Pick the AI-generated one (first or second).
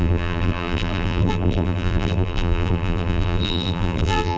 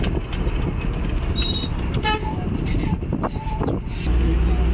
first